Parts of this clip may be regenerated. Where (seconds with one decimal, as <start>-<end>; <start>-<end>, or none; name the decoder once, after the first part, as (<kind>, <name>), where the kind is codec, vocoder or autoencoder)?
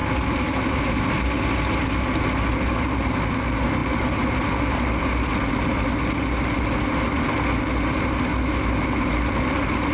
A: none